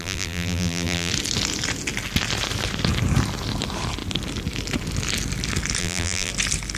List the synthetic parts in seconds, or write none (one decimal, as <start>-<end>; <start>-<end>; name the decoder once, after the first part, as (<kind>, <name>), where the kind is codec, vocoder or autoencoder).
0.0-1.1 (vocoder, BigVGAN v2); 5.8-6.3